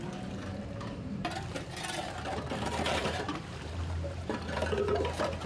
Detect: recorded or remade remade